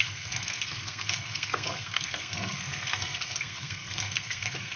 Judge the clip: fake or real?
fake